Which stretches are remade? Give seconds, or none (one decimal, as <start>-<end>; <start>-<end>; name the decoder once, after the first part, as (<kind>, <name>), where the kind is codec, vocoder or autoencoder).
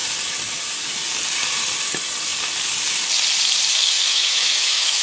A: 3.7-5.0 (autoencoder, DAC-VAE)